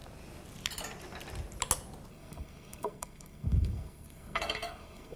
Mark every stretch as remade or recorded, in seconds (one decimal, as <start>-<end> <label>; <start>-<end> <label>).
0.0-2.1 recorded; 2.1-5.2 remade